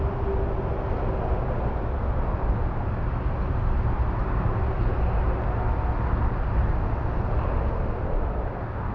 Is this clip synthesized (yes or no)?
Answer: no